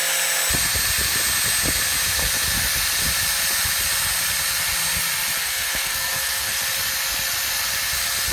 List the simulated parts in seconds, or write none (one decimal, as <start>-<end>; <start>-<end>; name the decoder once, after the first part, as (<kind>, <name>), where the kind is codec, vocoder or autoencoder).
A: 5.4-6.6 (codec, SNAC)